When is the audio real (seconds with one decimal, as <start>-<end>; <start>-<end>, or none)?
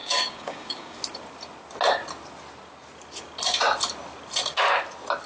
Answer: 1.0-5.3